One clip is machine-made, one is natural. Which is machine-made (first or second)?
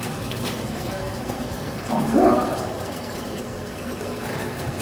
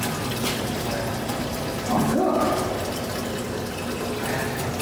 first